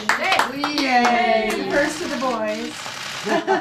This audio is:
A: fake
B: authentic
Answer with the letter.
B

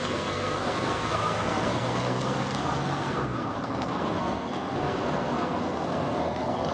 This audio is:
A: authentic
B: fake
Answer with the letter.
B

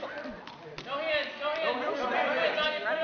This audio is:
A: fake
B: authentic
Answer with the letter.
B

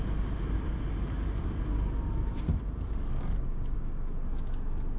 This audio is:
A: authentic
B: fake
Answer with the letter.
A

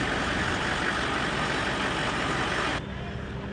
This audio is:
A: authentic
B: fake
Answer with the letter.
A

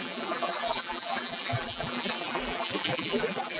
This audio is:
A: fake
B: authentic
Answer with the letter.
A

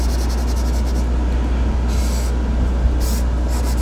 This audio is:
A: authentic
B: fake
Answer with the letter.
A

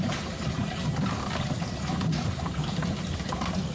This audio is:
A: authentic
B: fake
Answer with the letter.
A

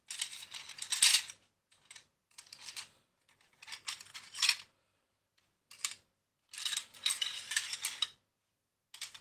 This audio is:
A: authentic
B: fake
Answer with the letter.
A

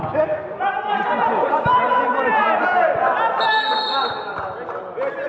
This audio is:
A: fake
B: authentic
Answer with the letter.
B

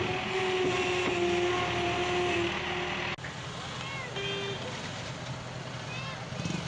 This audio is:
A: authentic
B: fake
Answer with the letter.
A